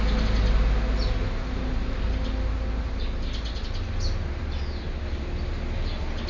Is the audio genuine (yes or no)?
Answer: yes